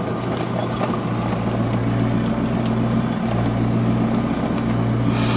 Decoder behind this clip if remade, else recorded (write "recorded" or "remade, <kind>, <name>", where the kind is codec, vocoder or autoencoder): recorded